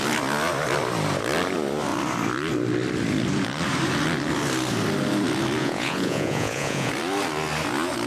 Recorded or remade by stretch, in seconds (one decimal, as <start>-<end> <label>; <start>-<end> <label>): 0.0-5.6 recorded; 5.6-6.9 remade; 6.9-8.1 recorded